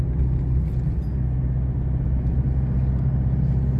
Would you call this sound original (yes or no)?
yes